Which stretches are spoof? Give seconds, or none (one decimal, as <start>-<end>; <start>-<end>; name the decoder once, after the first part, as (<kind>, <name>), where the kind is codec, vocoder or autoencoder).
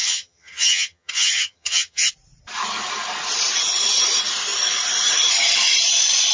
0.0-2.1 (vocoder, HiFi-GAN)